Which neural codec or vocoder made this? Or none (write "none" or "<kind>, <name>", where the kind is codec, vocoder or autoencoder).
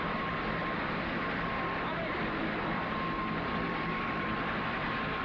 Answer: vocoder, BigVGAN v2